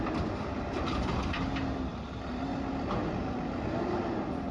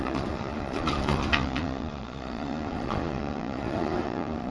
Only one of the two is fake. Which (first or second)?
second